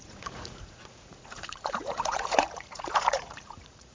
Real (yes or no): no